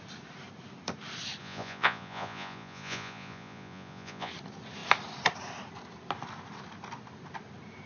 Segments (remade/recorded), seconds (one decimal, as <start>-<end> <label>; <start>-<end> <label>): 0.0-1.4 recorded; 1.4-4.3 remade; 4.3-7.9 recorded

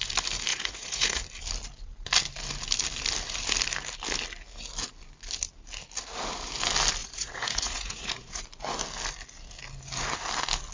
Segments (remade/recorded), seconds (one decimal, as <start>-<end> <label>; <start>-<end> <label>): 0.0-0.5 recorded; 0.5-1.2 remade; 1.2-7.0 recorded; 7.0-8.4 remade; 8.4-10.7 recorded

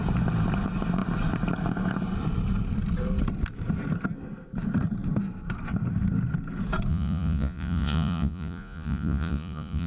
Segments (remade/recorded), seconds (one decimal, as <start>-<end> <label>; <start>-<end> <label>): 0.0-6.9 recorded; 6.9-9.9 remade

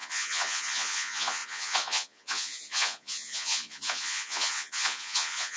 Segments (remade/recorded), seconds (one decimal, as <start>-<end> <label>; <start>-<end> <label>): 0.0-5.6 remade

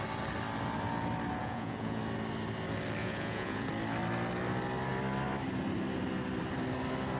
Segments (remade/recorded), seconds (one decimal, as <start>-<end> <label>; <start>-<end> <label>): 0.0-1.4 recorded; 1.4-2.0 remade; 2.0-3.0 recorded; 3.0-3.7 remade; 3.7-7.2 recorded